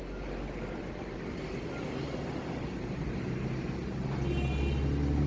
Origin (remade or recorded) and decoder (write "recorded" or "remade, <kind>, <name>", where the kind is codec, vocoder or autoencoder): recorded